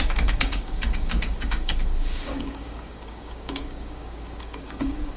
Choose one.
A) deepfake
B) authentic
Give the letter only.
A